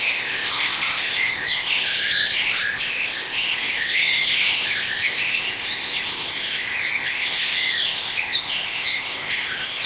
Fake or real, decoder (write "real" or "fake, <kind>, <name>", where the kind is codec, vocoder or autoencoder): fake, codec, ZipCodec